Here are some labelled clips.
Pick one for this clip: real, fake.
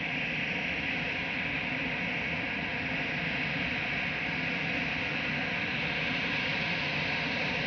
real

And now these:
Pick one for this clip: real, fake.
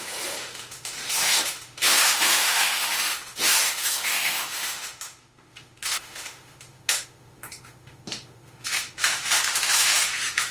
fake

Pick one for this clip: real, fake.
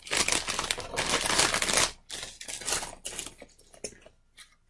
real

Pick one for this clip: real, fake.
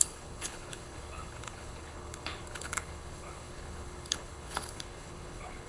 fake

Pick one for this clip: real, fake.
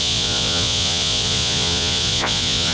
fake